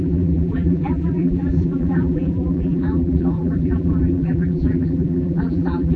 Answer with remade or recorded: remade